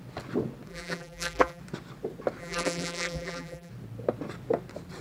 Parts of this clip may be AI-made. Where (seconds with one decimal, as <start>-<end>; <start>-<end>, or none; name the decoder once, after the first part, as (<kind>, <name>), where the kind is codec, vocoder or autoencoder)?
0.7-1.6 (vocoder, BigVGAN v2); 2.4-3.7